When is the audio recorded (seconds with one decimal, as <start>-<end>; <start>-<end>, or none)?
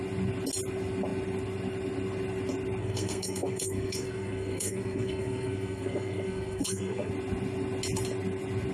0.0-2.8; 7.1-8.7